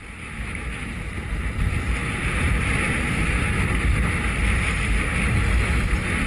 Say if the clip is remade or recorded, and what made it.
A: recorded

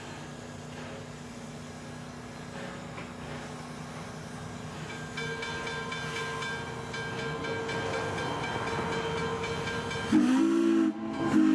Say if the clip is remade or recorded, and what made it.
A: recorded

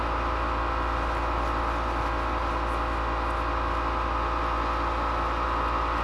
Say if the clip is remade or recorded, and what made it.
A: recorded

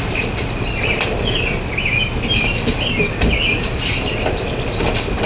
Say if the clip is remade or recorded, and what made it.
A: recorded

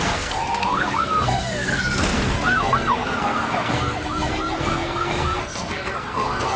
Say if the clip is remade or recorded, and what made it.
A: remade, codec, SNAC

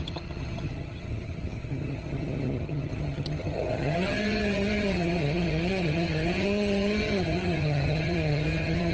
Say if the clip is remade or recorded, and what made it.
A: remade, vocoder, HiFi-GAN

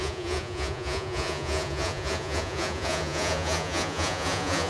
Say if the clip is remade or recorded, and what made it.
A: remade, vocoder, Vocos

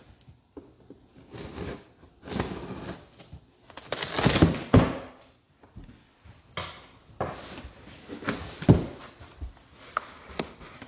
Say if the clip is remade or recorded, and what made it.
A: recorded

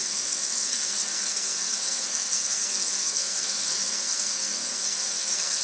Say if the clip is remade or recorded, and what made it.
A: remade, codec, SNAC